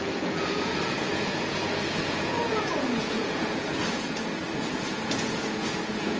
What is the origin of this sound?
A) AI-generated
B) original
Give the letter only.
A